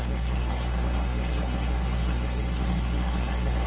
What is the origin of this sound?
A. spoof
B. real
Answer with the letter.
A